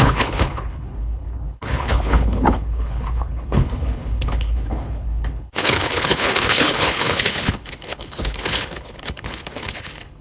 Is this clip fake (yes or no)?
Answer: yes